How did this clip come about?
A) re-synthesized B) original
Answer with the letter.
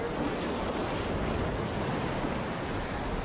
B